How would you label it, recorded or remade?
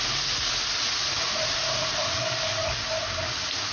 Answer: recorded